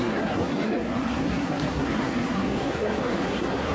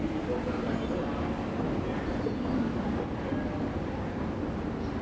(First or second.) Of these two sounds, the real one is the second